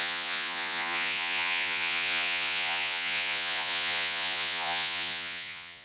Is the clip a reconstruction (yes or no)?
yes